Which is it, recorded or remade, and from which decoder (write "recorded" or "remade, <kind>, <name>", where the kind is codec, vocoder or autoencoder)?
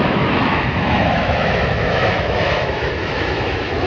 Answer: remade, autoencoder, DAC-VAE